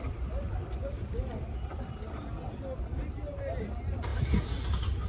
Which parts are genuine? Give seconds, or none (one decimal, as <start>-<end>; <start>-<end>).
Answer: 0.0-5.1